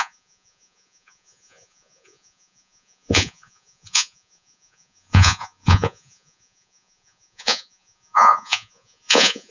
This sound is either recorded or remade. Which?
remade